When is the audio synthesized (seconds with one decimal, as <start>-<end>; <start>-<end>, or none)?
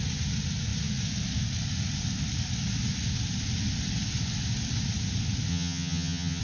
5.5-6.4